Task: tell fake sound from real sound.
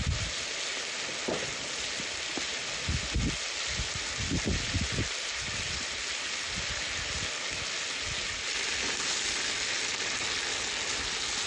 real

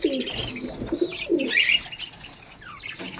real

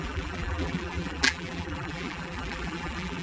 fake